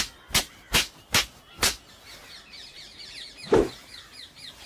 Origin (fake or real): real